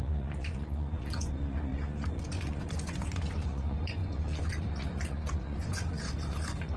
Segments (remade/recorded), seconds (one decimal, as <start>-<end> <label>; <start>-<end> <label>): 0.0-6.8 remade